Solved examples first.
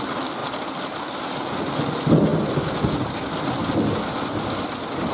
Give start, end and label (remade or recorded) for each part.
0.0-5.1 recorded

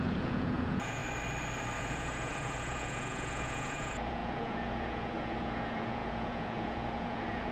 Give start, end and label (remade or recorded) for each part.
0.0-1.0 remade; 1.0-1.8 recorded; 1.8-7.5 remade

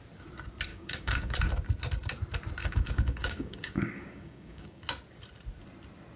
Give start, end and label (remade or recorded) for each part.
0.0-0.7 recorded; 0.7-1.4 remade; 1.4-2.6 recorded; 2.6-4.8 remade; 4.8-6.2 recorded

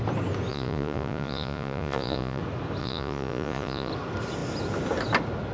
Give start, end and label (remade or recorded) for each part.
0.0-0.5 recorded; 0.5-2.4 remade; 2.4-2.8 recorded; 2.8-3.9 remade; 3.9-5.5 recorded